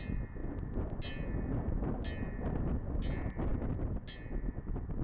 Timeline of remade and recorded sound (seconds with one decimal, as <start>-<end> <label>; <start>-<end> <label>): 0.0-5.0 recorded

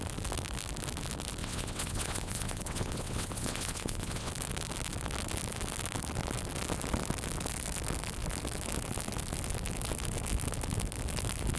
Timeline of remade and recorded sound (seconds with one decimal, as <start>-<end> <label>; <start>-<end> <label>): 0.0-1.4 recorded; 1.4-4.3 remade; 4.3-11.6 recorded

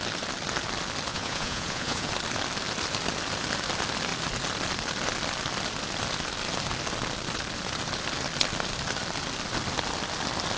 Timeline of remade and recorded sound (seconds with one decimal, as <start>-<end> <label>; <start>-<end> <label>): 0.0-1.1 recorded; 1.1-2.1 remade; 2.1-10.6 recorded

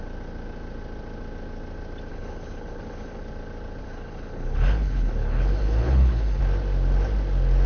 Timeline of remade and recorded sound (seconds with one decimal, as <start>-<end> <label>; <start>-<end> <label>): 0.0-2.1 recorded; 2.1-3.2 remade; 3.2-3.8 recorded; 3.8-6.4 remade; 6.4-7.7 recorded

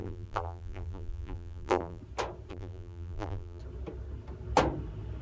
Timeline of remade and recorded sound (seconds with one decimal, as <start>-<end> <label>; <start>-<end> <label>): 0.0-2.0 remade; 2.0-2.5 recorded; 2.5-3.6 remade; 3.6-5.2 recorded

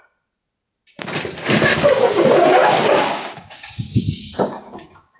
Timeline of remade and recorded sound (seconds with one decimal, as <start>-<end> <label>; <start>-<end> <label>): 0.0-2.6 recorded; 2.6-5.2 remade

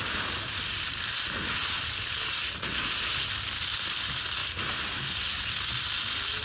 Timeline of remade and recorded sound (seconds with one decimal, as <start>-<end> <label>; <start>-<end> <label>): 0.0-4.4 recorded; 4.4-5.5 remade; 5.5-6.4 recorded

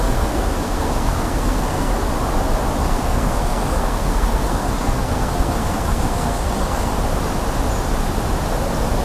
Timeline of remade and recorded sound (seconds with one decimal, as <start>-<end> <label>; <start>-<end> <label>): 0.0-1.9 remade; 1.9-2.8 recorded; 2.8-6.9 remade; 6.9-9.0 recorded